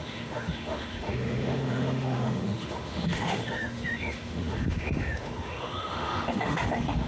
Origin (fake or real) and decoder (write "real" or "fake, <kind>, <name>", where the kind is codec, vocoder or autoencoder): fake, autoencoder, DAC-VAE